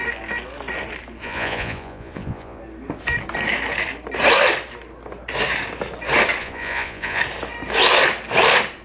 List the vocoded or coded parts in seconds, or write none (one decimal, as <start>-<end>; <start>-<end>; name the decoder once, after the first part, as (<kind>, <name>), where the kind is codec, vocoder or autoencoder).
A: 1.2-2.6 (vocoder, Vocos); 6.4-7.2